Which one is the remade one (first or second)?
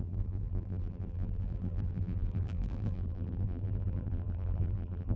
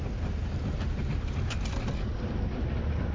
first